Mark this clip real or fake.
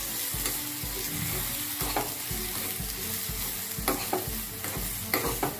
real